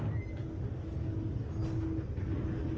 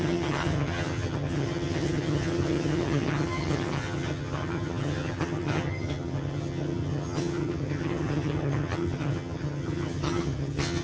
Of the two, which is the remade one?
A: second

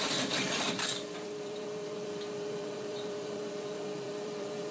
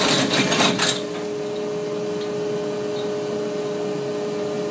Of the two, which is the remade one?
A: first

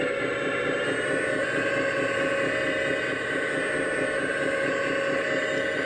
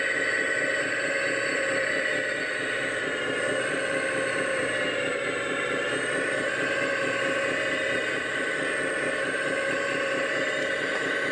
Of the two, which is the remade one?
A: second